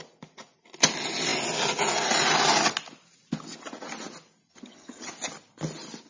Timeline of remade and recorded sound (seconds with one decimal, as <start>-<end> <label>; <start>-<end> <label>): 0.0-4.5 recorded; 4.5-5.1 remade; 5.1-6.1 recorded